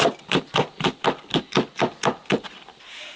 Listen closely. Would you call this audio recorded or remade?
remade